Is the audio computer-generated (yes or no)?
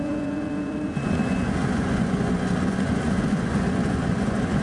yes